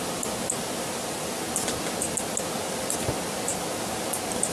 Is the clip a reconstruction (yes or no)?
no